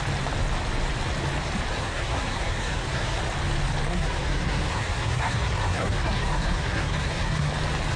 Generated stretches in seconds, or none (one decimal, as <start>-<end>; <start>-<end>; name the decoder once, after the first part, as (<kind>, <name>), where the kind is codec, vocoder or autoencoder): 1.7-3.2 (codec, SNAC); 3.9-7.5